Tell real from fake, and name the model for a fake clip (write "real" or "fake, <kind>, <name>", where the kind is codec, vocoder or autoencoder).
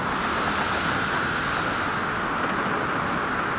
real